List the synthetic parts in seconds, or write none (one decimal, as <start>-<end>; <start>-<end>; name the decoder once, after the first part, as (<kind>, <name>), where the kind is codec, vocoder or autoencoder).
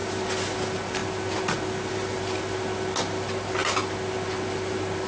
none